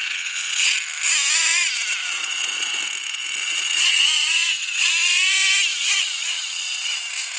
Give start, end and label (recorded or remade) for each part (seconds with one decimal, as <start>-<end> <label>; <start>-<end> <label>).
0.0-0.7 remade; 0.7-2.0 recorded; 2.0-2.8 remade; 2.8-3.4 recorded; 3.4-4.9 remade; 4.9-5.7 recorded; 5.7-7.0 remade; 7.0-7.4 recorded